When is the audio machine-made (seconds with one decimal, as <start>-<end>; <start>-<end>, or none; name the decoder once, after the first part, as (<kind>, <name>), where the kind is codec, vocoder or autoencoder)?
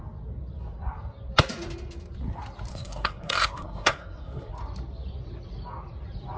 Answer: 2.7-4.5 (codec, SNAC)